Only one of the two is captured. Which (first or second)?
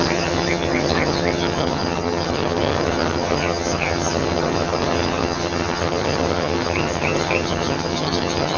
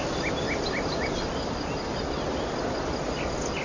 second